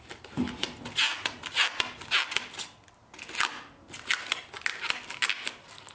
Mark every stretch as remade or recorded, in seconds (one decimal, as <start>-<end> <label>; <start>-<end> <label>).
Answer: 0.0-5.9 recorded